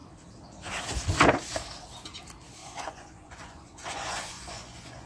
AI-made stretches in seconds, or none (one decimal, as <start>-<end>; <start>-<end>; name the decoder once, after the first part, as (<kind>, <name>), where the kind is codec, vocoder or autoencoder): 2.6-5.1 (vocoder, Vocos)